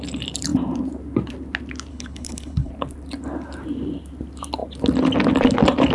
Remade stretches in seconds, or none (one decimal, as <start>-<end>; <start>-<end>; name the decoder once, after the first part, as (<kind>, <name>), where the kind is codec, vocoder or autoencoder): 1.9-2.7 (codec, HILCodec)